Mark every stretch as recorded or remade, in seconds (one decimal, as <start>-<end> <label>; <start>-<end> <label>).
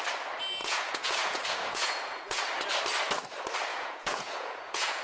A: 0.0-0.6 recorded; 0.6-2.4 remade; 2.4-3.7 recorded; 3.7-5.0 remade